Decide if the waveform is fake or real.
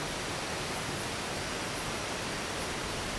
real